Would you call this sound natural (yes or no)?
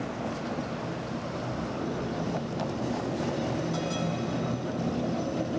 yes